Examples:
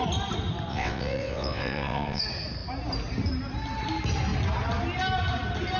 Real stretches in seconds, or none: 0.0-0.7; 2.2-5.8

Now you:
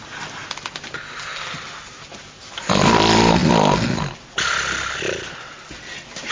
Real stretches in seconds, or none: 0.0-6.3

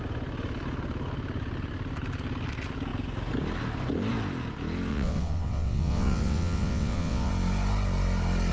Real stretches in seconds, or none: 0.0-4.9; 7.3-8.5

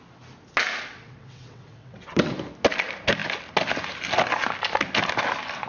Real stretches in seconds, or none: 0.0-0.9; 2.3-5.7

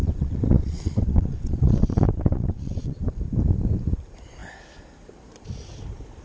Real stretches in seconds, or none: 3.2-6.2

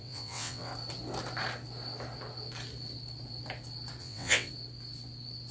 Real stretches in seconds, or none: 0.7-4.0; 4.5-5.5

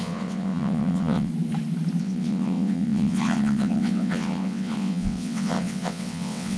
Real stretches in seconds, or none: 1.3-2.0